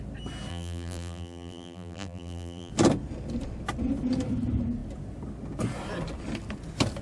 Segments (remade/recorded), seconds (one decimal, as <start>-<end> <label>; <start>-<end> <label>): 0.0-0.5 recorded; 0.5-2.7 remade; 2.7-7.0 recorded